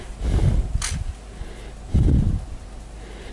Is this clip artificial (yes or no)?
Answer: no